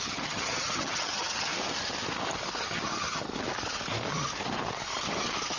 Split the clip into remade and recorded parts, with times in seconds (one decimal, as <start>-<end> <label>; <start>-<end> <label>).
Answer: 0.0-1.5 remade; 1.5-2.6 recorded; 2.6-3.3 remade; 3.3-5.6 recorded